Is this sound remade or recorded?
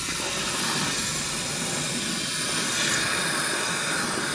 recorded